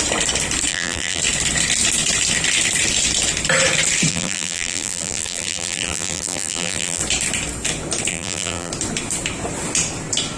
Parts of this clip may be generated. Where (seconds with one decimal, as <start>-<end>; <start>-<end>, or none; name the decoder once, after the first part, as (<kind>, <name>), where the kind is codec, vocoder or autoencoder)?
0.7-1.2 (vocoder, BigVGAN v2); 4.1-7.0; 8.1-8.7